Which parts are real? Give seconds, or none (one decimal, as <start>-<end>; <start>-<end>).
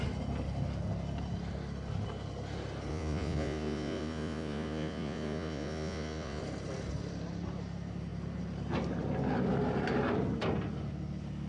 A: 0.0-2.9; 6.4-11.5